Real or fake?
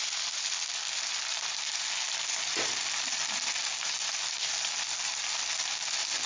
real